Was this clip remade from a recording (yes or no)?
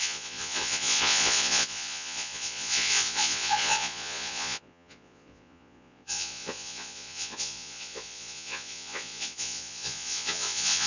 yes